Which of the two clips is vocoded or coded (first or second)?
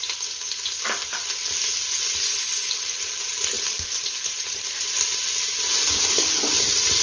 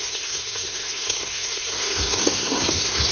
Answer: second